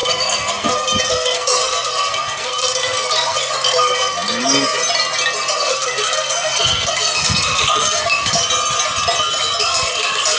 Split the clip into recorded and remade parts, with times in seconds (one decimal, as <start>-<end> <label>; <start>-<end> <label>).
0.0-4.8 remade; 4.8-5.5 recorded; 5.5-8.4 remade; 8.4-9.6 recorded; 9.6-10.4 remade